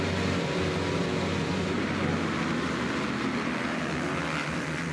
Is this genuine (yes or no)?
yes